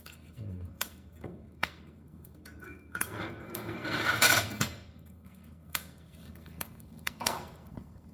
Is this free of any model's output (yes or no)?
no